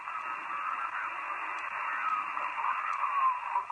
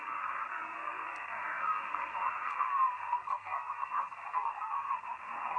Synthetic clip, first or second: second